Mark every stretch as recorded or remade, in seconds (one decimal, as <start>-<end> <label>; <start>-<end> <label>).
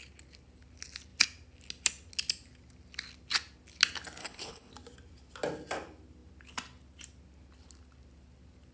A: 0.0-4.2 recorded; 4.2-4.7 remade; 4.7-8.7 recorded